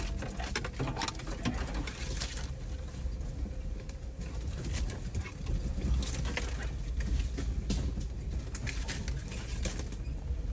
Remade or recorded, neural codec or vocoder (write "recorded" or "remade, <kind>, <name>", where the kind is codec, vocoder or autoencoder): recorded